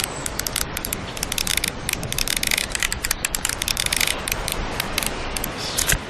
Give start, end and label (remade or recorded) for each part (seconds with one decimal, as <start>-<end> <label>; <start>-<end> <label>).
0.0-1.5 recorded; 1.5-5.2 remade; 5.2-6.1 recorded